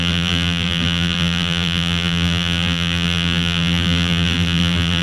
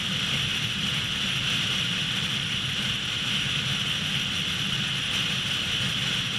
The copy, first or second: first